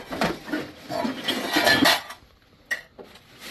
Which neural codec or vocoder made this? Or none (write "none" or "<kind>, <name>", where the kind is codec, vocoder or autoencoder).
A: none